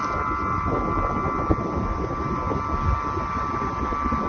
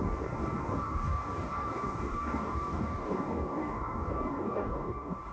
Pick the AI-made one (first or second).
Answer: second